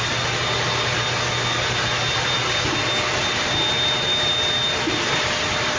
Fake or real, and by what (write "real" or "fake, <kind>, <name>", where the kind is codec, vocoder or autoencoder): real